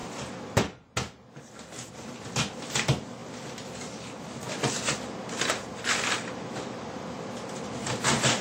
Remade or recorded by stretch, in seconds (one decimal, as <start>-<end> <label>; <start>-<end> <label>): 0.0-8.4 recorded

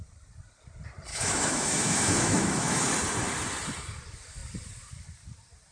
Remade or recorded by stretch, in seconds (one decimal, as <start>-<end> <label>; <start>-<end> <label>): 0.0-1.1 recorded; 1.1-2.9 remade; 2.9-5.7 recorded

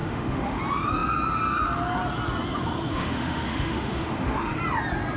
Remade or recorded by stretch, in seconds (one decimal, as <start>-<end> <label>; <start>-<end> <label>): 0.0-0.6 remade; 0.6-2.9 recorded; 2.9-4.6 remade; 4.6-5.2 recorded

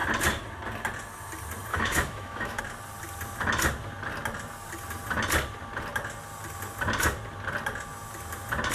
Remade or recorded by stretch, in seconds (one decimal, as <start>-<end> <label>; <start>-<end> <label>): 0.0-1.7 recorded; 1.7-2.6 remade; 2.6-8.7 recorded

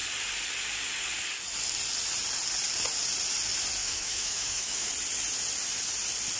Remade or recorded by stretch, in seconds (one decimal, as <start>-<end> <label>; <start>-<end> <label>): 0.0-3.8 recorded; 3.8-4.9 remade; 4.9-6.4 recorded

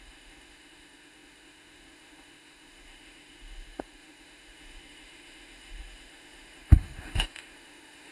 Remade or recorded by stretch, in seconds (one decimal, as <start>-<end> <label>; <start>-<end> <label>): 0.0-8.1 remade

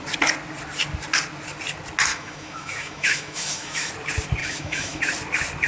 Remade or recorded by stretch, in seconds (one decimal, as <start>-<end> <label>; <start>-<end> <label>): 0.0-2.1 recorded; 2.1-3.9 remade; 3.9-4.4 recorded; 4.4-5.0 remade; 5.0-5.7 recorded

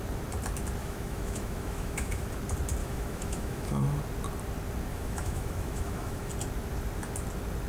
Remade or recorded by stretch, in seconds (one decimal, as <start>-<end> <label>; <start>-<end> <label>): 0.0-0.8 recorded; 0.8-2.3 remade; 2.3-2.8 recorded; 2.8-3.8 remade; 3.8-4.9 recorded; 4.9-6.3 remade; 6.3-7.7 recorded